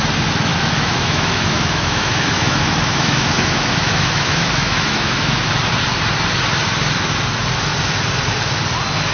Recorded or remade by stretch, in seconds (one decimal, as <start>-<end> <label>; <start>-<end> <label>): 0.0-0.5 recorded; 0.5-5.4 remade; 5.4-9.1 recorded